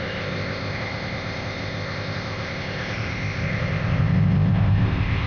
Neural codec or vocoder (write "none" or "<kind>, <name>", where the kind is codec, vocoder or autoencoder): codec, ZipCodec